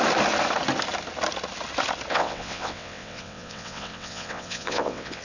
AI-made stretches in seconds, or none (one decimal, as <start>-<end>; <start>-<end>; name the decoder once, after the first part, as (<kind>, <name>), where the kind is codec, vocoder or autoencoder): 2.1-5.2 (vocoder, WaveNeXt)